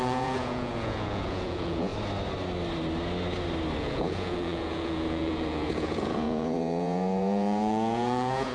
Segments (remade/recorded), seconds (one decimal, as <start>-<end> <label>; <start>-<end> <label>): 0.0-1.9 remade; 1.9-3.8 recorded; 3.8-8.5 remade